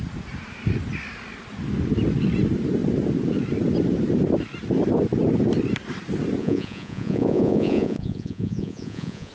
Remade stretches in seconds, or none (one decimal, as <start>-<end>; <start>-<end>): 6.4-9.3